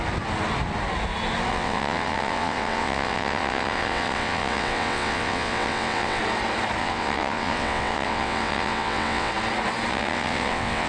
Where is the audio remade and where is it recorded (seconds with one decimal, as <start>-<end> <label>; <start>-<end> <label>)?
0.0-1.5 recorded; 1.5-6.2 remade; 6.2-6.8 recorded; 6.8-9.3 remade; 9.3-9.9 recorded; 9.9-10.9 remade